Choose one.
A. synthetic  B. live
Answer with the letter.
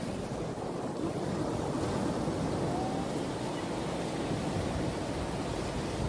B